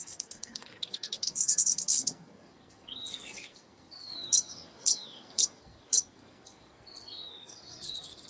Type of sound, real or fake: fake